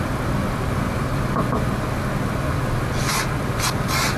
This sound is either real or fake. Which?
real